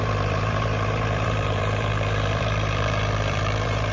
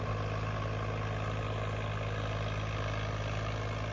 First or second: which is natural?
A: second